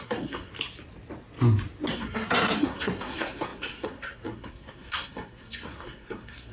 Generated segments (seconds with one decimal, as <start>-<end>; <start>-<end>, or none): 0.0-0.5; 1.9-6.5